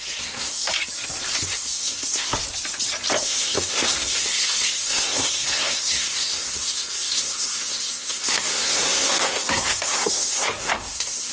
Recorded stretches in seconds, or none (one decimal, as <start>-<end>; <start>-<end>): 0.7-1.4; 2.3-3.2